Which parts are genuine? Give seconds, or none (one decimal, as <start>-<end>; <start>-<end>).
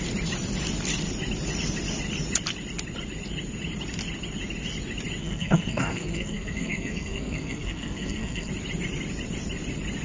0.0-5.2; 8.5-10.0